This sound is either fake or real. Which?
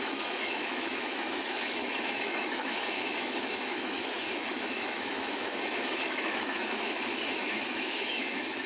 fake